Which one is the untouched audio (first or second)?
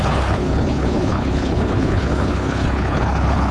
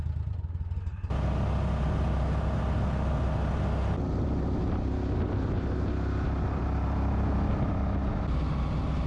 second